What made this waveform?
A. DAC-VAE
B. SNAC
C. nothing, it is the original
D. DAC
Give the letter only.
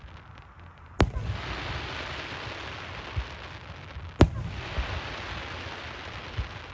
C